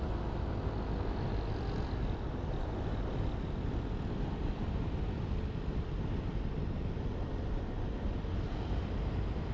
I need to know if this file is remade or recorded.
recorded